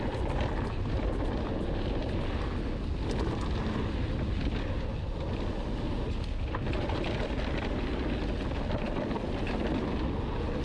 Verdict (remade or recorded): recorded